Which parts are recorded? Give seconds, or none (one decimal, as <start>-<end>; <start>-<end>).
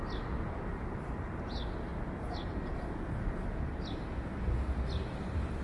0.0-5.6